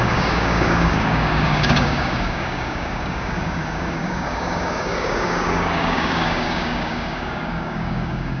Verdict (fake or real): fake